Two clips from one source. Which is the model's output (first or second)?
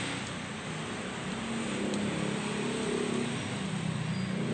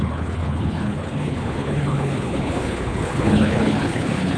second